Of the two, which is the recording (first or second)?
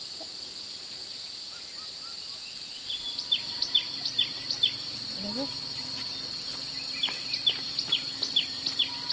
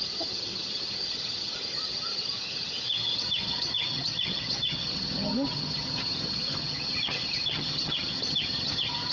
first